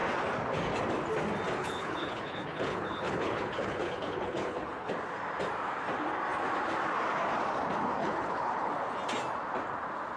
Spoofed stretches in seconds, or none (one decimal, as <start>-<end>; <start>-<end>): 1.6-4.9; 8.0-8.7